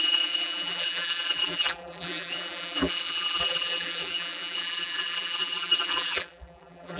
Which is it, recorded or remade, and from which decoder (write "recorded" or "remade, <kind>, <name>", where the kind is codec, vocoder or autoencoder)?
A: remade, vocoder, BigVGAN v2